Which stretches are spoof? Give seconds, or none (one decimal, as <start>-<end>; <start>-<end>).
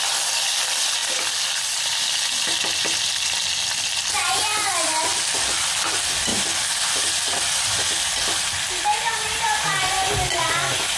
none